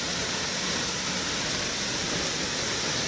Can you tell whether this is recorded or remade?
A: recorded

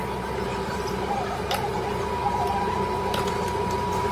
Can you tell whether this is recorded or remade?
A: remade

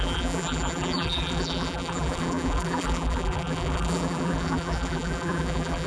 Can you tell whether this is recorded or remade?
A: remade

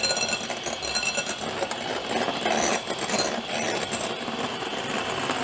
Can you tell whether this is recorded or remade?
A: recorded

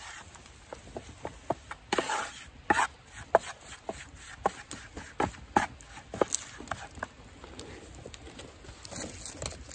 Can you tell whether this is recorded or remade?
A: recorded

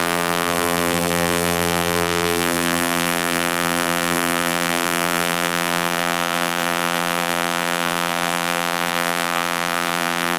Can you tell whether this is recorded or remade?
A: remade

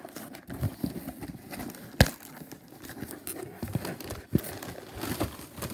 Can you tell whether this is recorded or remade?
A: recorded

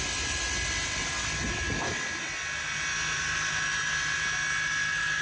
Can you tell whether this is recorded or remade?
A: recorded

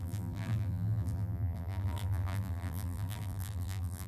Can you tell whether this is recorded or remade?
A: remade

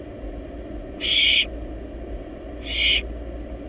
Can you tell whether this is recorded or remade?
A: recorded